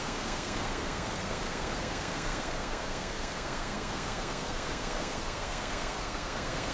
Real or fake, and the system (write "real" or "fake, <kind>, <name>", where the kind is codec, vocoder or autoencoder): fake, codec, SNAC